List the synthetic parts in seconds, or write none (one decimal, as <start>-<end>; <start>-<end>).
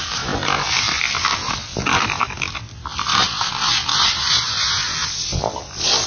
none